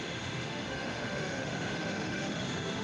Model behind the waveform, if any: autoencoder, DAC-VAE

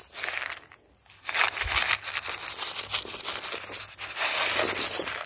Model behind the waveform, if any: none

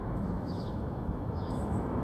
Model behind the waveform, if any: autoencoder, DAC-VAE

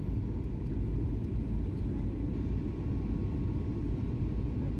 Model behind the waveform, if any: none